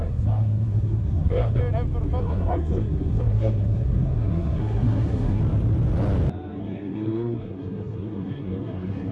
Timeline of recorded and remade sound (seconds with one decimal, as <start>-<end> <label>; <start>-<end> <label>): 0.0-1.6 remade; 1.6-2.2 recorded; 2.2-5.4 remade; 5.4-6.6 recorded; 6.6-9.1 remade

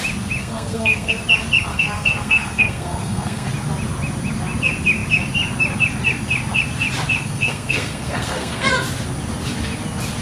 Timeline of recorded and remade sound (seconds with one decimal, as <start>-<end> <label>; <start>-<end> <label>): 0.0-0.4 recorded; 0.4-1.1 remade; 1.1-1.7 recorded; 1.7-3.5 remade; 3.5-7.2 recorded; 7.2-8.7 remade; 8.7-10.2 recorded

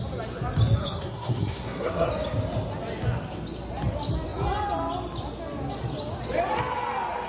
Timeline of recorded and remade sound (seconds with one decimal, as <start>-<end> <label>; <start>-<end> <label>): 0.0-0.8 recorded; 0.8-2.1 remade; 2.1-7.3 recorded

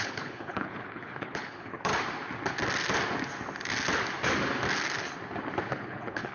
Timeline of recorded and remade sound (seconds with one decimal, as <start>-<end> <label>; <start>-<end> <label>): 0.0-1.9 remade; 1.9-5.7 recorded; 5.7-6.3 remade

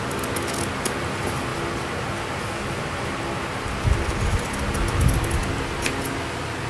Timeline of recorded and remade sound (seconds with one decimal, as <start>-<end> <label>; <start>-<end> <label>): 0.0-6.7 recorded

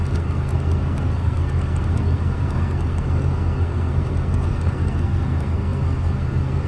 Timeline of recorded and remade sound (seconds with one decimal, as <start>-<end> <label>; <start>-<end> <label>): 0.0-6.7 remade